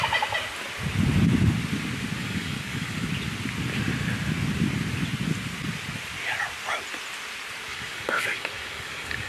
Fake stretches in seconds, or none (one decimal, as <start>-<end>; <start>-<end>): 2.2-3.1; 7.7-9.3